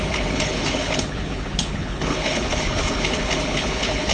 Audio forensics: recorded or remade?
remade